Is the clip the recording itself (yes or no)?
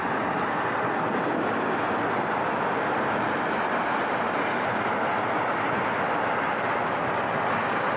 yes